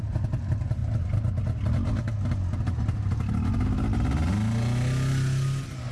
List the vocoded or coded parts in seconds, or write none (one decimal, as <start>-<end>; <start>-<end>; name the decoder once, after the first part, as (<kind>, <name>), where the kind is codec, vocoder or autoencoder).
none